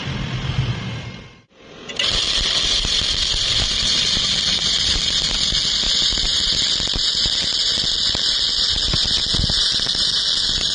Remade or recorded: recorded